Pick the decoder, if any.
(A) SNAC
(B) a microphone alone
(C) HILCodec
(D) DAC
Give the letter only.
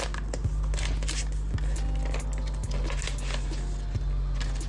B